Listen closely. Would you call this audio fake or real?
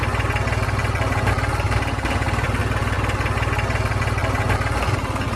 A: real